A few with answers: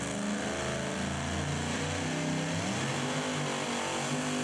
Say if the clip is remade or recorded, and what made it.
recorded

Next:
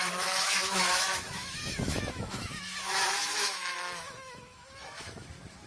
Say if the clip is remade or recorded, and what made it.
remade, autoencoder, DAC-VAE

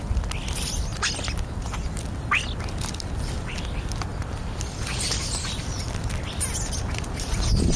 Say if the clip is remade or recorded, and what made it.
recorded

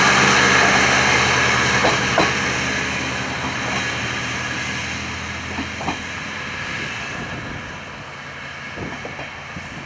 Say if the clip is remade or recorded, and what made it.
recorded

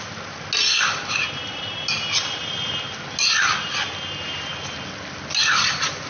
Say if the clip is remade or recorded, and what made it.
recorded